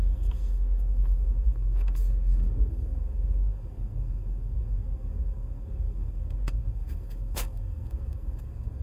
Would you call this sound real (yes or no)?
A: no